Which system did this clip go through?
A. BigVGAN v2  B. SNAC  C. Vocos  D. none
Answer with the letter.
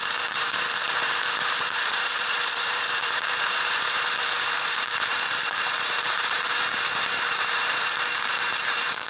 A